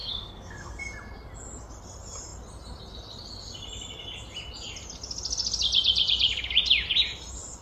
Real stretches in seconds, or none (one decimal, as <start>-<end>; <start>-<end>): 0.8-7.6